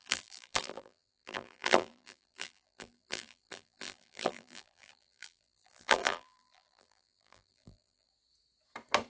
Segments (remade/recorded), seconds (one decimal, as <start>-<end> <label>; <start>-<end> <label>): 0.0-8.1 remade; 8.1-9.1 recorded